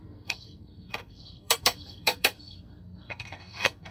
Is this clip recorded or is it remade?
remade